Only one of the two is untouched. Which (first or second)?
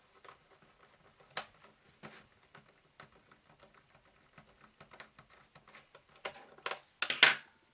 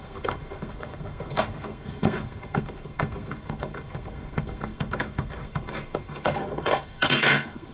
first